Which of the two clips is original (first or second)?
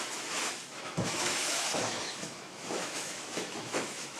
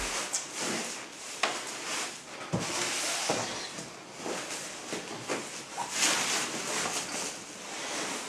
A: second